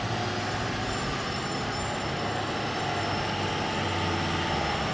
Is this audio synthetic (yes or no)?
no